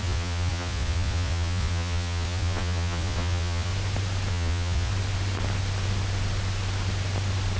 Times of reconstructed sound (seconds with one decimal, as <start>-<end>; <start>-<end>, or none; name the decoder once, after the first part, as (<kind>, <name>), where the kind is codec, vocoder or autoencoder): 0.0-3.7 (vocoder, Vocos); 4.3-4.9